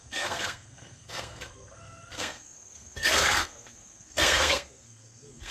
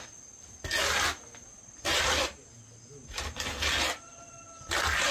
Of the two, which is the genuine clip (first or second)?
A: second